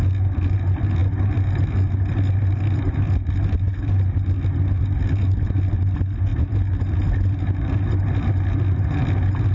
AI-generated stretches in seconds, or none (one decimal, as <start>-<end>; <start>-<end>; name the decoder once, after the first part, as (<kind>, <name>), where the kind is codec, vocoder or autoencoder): none